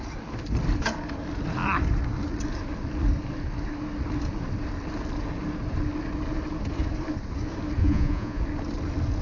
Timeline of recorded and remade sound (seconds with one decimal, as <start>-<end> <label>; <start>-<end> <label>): 0.0-7.8 recorded; 7.8-8.4 remade; 8.4-9.2 recorded